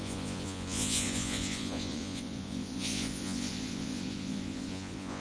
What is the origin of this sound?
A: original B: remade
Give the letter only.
B